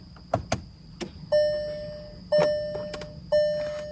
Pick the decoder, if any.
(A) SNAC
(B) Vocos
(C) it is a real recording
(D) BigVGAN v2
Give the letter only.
C